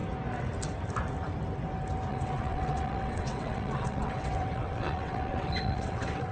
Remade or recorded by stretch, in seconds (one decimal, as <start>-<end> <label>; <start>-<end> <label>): 0.0-2.1 recorded; 2.1-6.3 remade